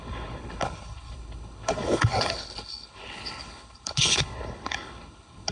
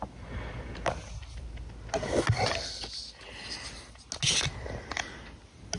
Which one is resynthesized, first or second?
first